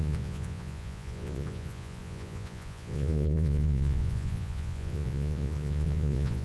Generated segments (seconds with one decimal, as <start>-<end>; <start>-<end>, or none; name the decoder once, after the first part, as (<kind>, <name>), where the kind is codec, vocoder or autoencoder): 0.0-6.4 (vocoder, Vocos)